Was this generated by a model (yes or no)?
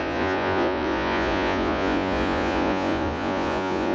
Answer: yes